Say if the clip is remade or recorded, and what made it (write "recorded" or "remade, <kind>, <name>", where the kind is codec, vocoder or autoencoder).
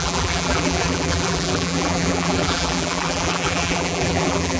remade, vocoder, BigVGAN v2